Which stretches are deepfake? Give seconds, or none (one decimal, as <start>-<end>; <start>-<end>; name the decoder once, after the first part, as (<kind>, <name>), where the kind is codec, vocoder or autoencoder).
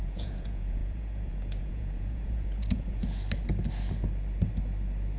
0.0-3.0 (vocoder, Vocos)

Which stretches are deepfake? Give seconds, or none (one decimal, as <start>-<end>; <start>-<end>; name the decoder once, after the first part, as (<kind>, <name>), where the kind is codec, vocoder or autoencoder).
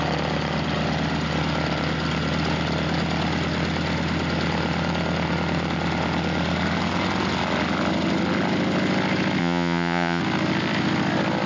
9.4-10.2 (vocoder, Vocos)